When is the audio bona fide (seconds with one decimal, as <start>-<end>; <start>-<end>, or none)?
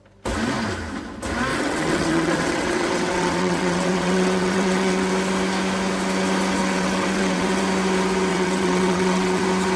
0.0-1.5; 5.1-6.6; 7.6-8.3; 9.4-9.8